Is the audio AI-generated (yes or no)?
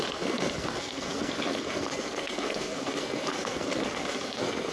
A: yes